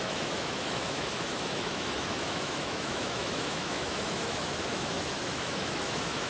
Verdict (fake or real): fake